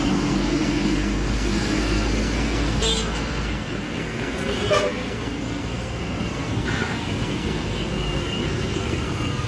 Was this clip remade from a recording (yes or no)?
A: yes